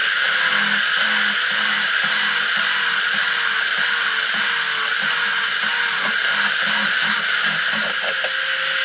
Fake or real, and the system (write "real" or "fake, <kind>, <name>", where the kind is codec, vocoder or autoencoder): real